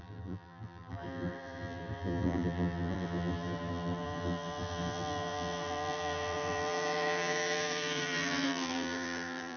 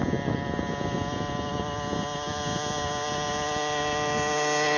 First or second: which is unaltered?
second